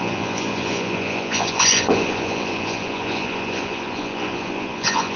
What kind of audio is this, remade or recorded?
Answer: remade